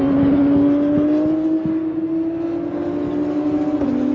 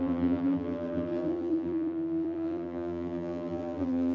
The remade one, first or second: second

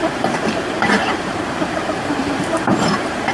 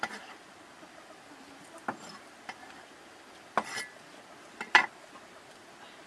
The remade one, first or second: first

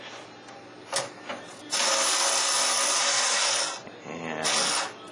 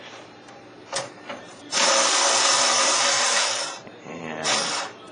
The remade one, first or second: second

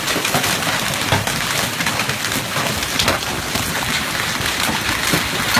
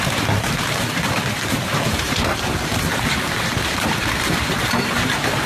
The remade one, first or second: second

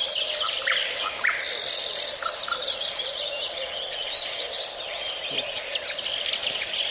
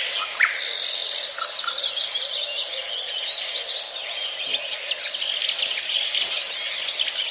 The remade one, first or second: first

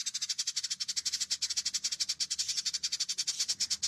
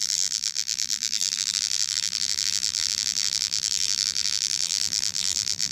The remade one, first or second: second